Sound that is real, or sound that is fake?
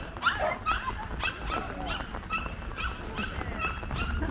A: real